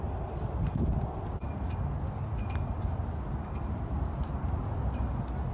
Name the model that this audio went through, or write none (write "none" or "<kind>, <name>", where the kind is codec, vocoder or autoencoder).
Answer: none